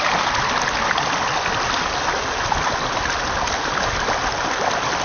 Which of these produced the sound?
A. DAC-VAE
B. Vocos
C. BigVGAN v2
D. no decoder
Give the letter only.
D